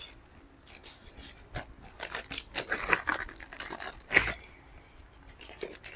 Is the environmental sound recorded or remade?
recorded